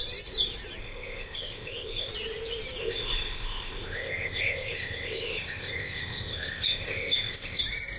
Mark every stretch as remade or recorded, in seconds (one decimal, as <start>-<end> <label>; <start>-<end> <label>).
0.0-0.8 recorded; 0.8-2.1 remade; 2.1-2.8 recorded; 2.8-7.6 remade; 7.6-8.0 recorded